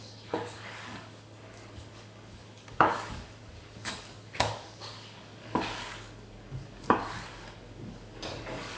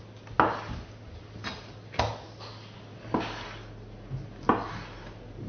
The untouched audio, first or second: second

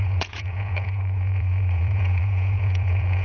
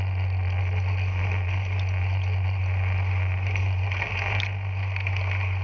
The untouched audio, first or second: second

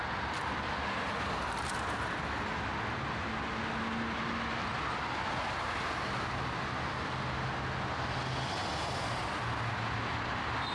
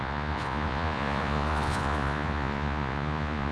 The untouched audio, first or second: first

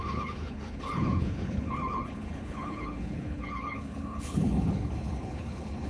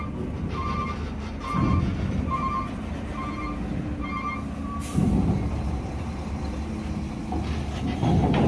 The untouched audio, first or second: second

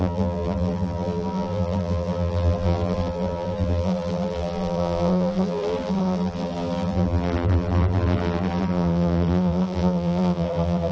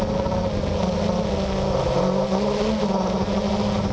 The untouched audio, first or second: second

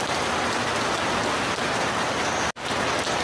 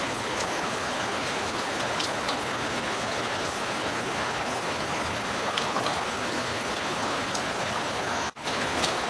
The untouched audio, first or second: first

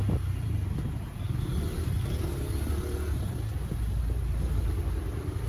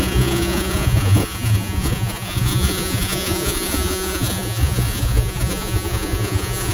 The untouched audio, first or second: first